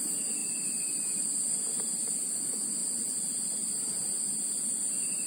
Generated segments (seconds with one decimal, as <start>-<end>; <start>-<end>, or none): none

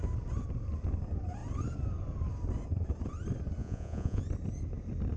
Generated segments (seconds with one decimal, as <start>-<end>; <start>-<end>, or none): 3.6-4.2

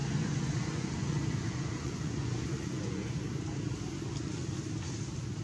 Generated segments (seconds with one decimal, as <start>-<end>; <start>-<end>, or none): 0.0-3.2

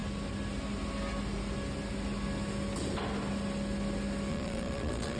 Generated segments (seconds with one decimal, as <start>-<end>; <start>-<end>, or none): 4.3-5.2

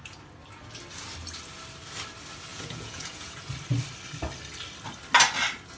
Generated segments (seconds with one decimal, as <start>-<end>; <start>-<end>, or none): 2.5-3.5